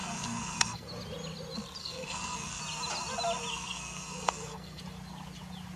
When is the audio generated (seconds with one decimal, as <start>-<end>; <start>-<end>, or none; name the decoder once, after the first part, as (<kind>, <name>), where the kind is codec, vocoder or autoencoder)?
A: 0.0-0.9 (codec, SNAC); 1.8-2.6; 3.5-4.8